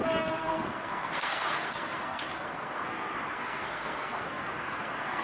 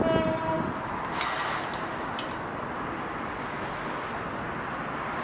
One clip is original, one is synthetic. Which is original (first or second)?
second